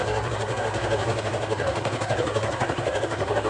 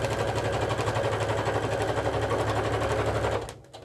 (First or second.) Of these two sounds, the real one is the second